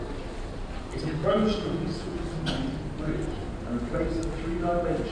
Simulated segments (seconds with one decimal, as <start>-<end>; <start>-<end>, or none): 1.2-2.2